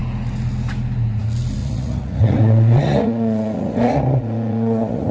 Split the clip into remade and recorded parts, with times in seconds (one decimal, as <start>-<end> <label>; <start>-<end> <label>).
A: 0.0-1.6 recorded; 1.6-5.1 remade